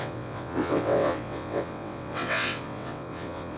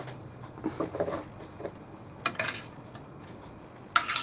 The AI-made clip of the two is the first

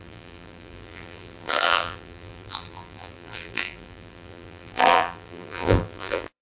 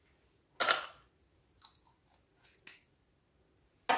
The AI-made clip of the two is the first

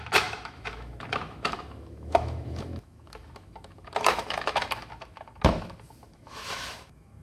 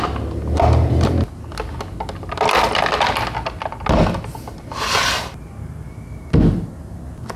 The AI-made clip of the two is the first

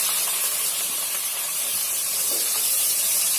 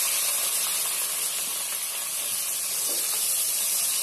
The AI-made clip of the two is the first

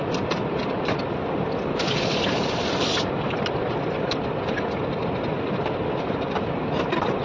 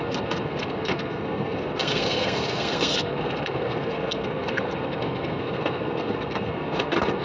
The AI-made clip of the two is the second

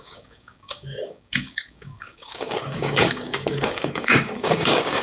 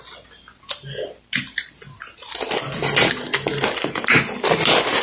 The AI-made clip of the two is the first